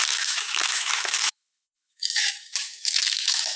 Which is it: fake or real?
fake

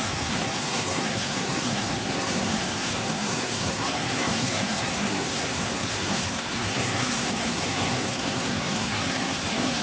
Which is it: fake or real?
fake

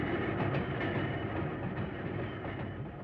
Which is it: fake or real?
fake